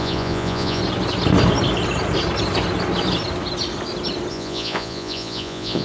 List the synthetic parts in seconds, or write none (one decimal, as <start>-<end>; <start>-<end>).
0.0-0.8; 4.3-5.8